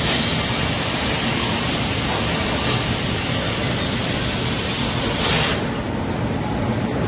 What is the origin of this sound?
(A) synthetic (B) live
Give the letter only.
B